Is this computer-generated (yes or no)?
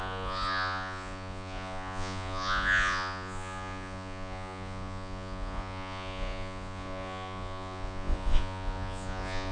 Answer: yes